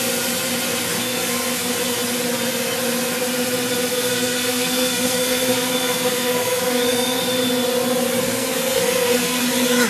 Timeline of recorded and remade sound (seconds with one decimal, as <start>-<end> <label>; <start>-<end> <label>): 0.0-0.9 recorded; 0.9-1.7 remade; 1.7-3.9 recorded; 3.9-7.2 remade; 7.2-8.2 recorded; 8.2-9.4 remade; 9.4-9.9 recorded